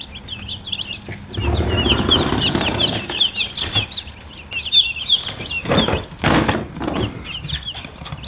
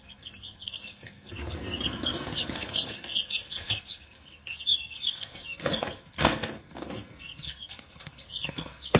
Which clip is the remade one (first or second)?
second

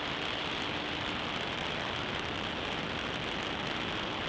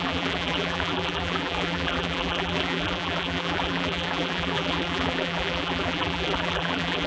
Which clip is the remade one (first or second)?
second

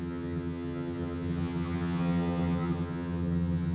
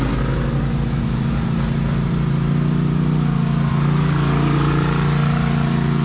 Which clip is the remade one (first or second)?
first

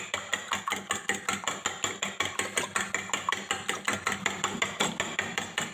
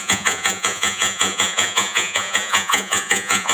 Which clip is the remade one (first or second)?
second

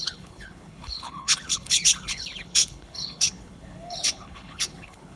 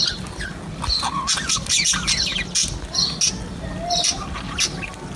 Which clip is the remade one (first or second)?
first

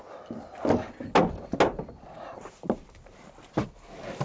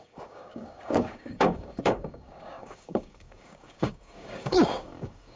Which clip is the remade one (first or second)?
second